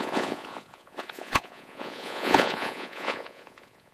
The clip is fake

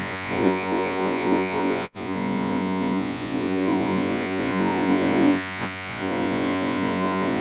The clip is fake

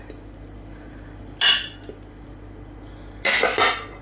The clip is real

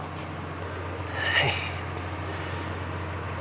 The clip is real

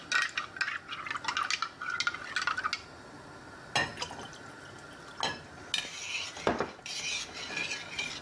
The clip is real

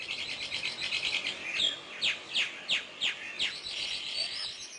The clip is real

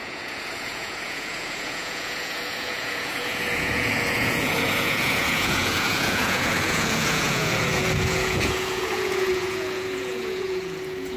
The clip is fake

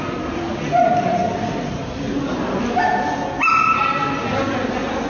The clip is real